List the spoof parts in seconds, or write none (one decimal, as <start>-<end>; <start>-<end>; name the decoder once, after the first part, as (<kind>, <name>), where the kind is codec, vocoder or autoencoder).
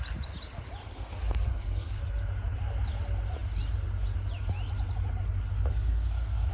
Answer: 0.8-2.0 (codec, SNAC); 5.7-6.5